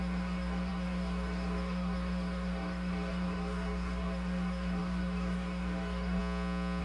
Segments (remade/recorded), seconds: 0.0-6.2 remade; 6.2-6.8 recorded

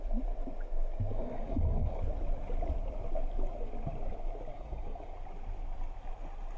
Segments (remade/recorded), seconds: 0.0-1.1 recorded; 1.1-2.0 remade; 2.0-4.5 recorded; 4.5-5.1 remade; 5.1-6.6 recorded